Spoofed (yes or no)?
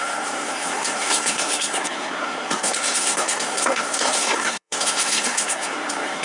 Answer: yes